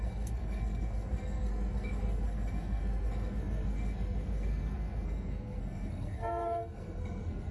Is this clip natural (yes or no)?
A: no